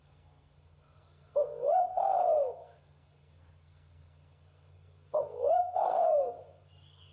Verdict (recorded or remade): remade